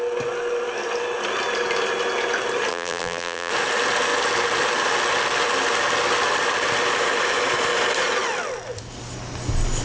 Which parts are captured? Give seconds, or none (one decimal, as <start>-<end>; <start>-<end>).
0.0-2.7; 3.5-9.8